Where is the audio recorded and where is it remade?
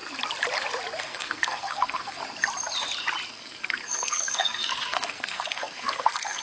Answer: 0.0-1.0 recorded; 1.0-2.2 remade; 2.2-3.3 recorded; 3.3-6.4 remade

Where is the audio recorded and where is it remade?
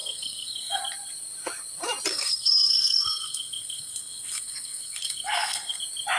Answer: 0.0-0.8 remade; 0.8-2.1 recorded; 2.1-5.8 remade; 5.8-6.2 recorded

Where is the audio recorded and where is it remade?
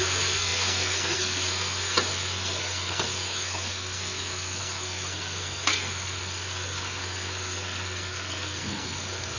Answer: 0.0-9.4 remade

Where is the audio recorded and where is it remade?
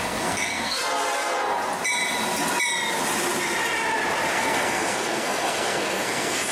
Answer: 0.0-0.8 remade; 0.8-4.3 recorded; 4.3-6.5 remade